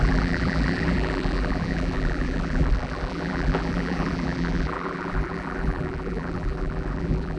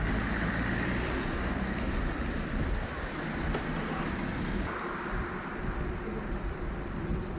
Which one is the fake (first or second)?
first